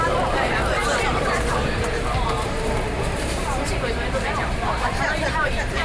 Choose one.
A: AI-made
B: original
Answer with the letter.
A